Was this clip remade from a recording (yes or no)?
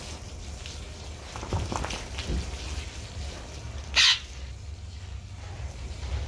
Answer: no